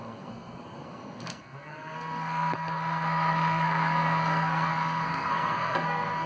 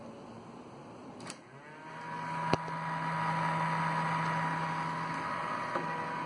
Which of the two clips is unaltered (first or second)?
second